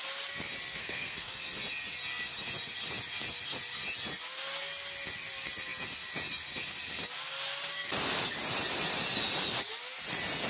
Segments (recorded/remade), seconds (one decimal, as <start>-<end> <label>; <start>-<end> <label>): 0.0-0.8 recorded; 0.8-1.4 remade; 1.4-10.5 recorded